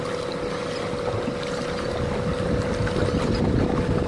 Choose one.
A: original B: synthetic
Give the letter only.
A